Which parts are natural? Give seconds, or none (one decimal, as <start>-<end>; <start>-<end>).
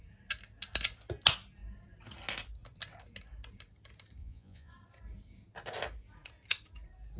0.0-4.2; 4.7-7.2